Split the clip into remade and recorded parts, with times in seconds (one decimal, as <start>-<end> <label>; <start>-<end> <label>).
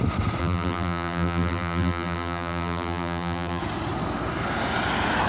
0.0-0.4 recorded; 0.4-3.6 remade; 3.6-5.3 recorded